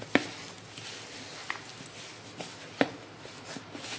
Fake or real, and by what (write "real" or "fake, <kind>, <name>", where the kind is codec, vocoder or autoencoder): real